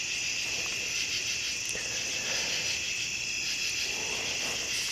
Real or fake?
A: real